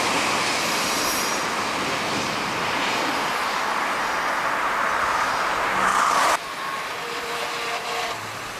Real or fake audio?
real